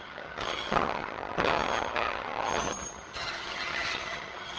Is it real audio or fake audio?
fake